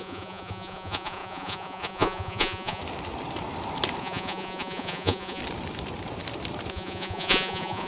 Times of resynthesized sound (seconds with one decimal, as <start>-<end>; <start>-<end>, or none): 0.0-2.8; 4.0-5.4; 6.7-7.9